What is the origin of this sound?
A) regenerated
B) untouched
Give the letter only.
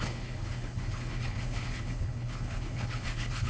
A